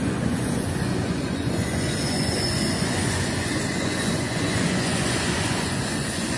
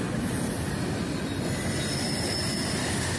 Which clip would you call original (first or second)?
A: second